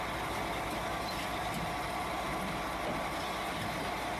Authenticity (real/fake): real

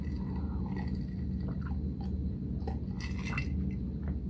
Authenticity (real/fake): real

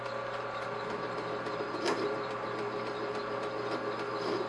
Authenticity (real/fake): real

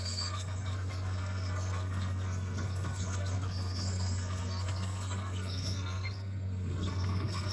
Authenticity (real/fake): fake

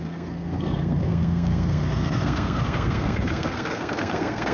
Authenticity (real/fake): fake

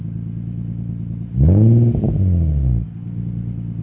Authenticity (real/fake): real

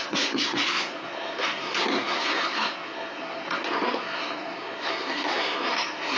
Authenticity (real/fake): fake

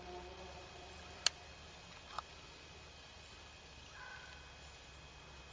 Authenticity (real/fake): real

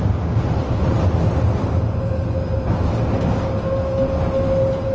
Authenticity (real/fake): real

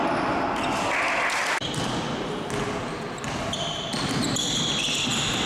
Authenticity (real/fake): real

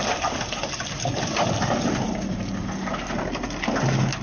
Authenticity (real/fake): real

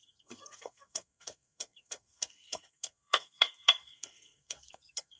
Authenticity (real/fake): fake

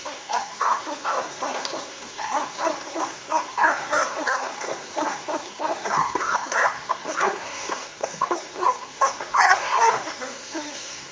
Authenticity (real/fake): fake